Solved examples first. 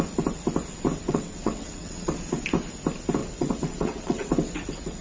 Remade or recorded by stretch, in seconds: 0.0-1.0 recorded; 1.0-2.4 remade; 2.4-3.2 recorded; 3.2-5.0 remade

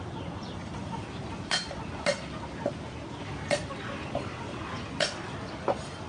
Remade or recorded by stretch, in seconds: 0.0-2.1 remade; 2.1-3.2 recorded; 3.2-6.1 remade

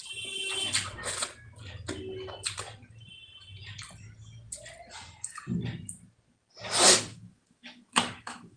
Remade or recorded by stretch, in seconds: 0.0-7.1 recorded; 7.1-8.6 remade

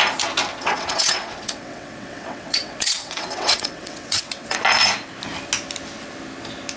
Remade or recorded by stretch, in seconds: 0.0-0.5 recorded; 0.5-4.6 remade; 4.6-6.8 recorded

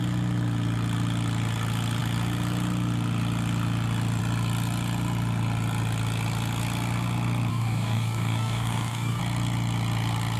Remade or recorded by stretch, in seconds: 0.0-7.5 recorded; 7.5-9.2 remade; 9.2-10.4 recorded